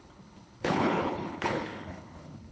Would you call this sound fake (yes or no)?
yes